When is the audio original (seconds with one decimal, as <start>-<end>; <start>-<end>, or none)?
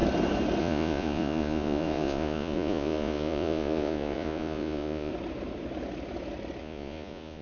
0.0-0.6; 5.1-6.6